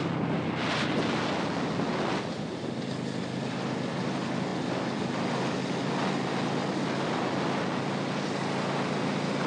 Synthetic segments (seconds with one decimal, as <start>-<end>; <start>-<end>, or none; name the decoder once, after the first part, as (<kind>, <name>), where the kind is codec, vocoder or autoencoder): none